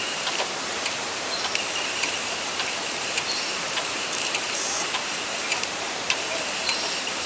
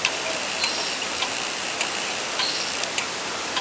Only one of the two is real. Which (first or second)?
second